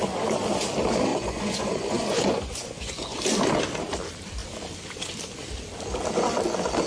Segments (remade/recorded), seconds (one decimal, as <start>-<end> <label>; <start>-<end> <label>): 0.0-1.1 recorded; 1.1-3.2 remade; 3.2-6.9 recorded